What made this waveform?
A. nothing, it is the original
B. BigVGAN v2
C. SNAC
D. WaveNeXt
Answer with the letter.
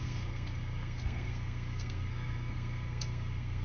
C